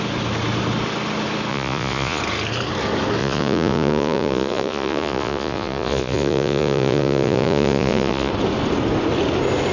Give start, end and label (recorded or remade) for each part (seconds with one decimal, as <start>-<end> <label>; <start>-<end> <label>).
0.0-1.5 recorded; 1.5-2.2 remade; 2.2-3.2 recorded; 3.2-8.3 remade; 8.3-9.7 recorded